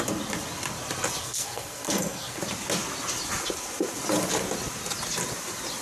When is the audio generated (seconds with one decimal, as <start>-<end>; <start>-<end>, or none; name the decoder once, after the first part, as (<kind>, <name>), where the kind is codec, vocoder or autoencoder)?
1.2-2.4 (codec, SNAC)